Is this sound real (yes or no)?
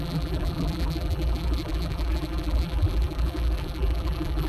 no